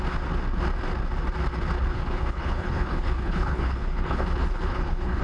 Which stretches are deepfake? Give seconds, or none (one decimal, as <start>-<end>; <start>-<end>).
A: 1.9-5.2